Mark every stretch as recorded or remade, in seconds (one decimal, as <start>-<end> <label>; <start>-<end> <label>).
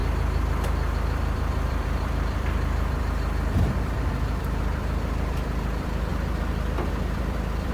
0.0-6.1 remade; 6.1-6.9 recorded; 6.9-7.7 remade